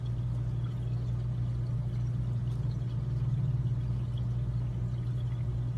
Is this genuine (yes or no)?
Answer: yes